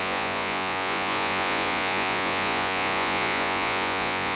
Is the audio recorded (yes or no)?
no